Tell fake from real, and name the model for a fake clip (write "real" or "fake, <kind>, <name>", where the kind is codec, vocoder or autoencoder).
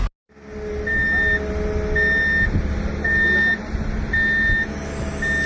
real